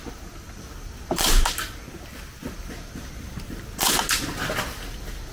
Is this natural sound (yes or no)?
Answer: yes